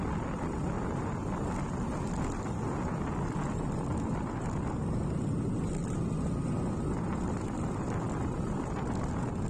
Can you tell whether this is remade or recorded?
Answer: recorded